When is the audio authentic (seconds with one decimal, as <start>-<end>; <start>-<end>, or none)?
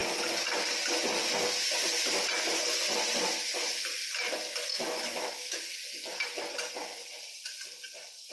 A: 0.0-4.7; 5.6-8.3